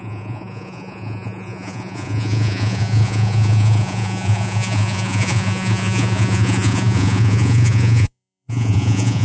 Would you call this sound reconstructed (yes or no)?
yes